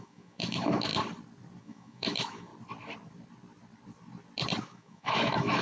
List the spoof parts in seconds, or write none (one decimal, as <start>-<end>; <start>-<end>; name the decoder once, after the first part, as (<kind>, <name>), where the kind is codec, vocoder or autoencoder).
0.0-0.9 (autoencoder, DAC-VAE); 1.6-2.5; 4.6-5.6